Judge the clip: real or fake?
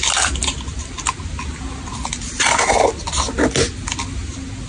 real